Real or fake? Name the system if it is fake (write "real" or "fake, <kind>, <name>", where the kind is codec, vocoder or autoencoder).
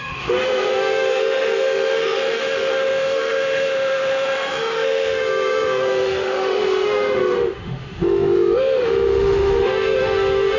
fake, autoencoder, DAC-VAE